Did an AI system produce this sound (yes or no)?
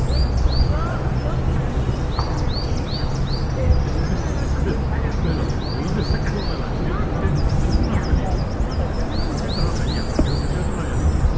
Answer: no